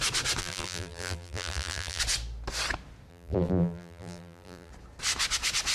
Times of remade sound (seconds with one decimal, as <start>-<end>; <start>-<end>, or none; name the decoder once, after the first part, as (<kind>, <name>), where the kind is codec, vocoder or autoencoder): 0.4-2.0 (vocoder, BigVGAN v2); 3.1-4.7